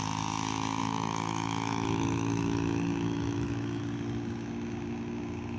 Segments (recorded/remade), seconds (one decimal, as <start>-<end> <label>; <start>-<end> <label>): 0.0-0.8 recorded; 0.8-3.8 remade; 3.8-5.6 recorded